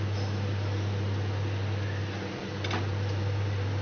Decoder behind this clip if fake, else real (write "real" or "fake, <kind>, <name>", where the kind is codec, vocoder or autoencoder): real